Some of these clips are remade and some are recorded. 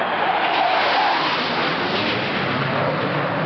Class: recorded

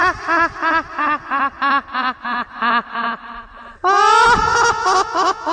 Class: recorded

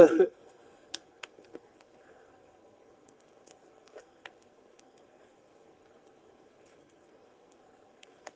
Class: remade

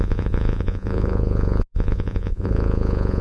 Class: remade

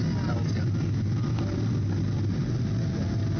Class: recorded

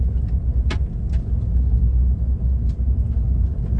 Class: recorded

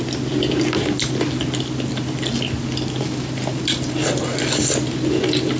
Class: recorded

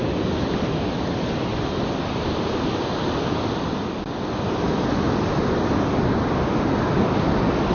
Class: recorded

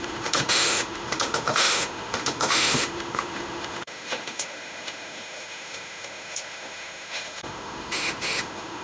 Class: remade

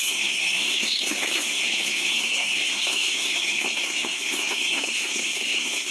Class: remade